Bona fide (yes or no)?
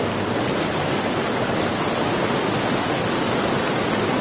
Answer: yes